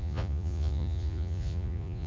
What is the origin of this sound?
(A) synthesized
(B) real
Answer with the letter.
A